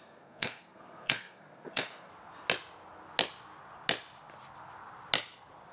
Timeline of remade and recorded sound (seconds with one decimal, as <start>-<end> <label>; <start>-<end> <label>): 0.0-2.1 remade; 2.1-5.7 recorded